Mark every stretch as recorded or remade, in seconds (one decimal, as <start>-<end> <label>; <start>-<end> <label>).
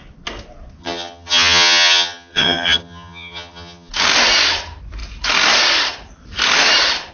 0.0-0.8 recorded; 0.8-3.9 remade; 3.9-7.1 recorded